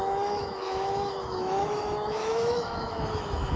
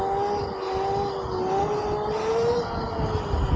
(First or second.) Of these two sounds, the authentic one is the second